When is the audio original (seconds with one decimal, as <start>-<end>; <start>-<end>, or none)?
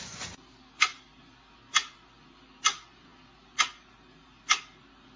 0.0-5.2